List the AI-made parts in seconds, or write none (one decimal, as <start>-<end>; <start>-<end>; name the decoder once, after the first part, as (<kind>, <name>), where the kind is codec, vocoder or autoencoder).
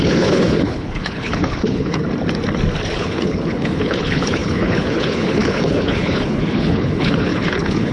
0.0-2.0 (codec, HILCodec); 2.9-7.9